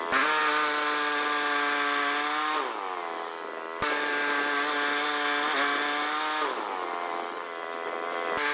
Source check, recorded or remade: recorded